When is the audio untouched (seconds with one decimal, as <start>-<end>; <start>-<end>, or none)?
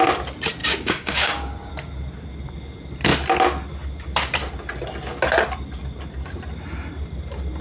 0.0-0.6; 1.7-7.6